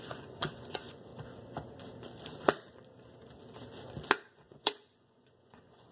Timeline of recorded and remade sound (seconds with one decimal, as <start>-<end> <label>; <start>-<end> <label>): 0.0-1.1 remade; 1.1-4.3 recorded; 4.3-5.9 remade